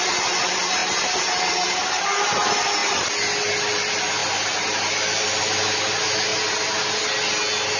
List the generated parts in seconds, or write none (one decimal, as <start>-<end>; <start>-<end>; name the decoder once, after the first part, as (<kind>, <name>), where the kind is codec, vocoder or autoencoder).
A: none